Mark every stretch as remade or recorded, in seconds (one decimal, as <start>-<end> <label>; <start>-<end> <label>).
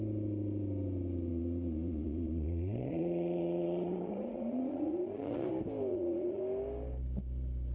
0.0-1.3 recorded; 1.3-5.5 remade; 5.5-5.9 recorded; 5.9-6.4 remade; 6.4-7.7 recorded